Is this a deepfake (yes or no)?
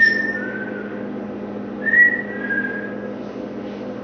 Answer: no